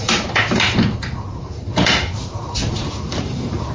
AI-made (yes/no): yes